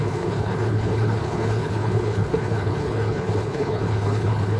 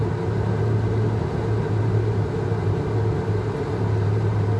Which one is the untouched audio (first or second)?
second